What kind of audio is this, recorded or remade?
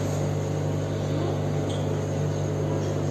recorded